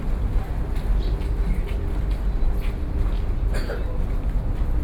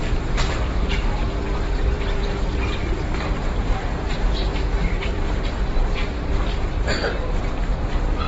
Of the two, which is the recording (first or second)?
first